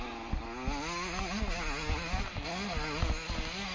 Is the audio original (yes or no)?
yes